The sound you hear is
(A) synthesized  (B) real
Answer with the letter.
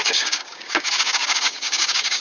A